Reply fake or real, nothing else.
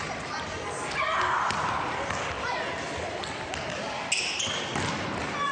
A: real